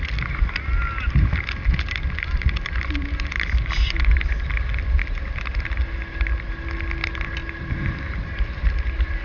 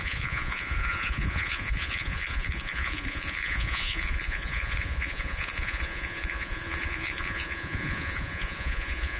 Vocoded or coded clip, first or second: second